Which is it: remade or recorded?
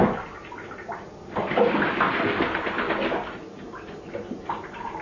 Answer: recorded